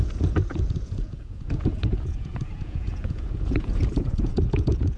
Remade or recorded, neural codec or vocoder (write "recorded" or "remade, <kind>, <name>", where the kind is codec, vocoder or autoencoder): remade, vocoder, Vocos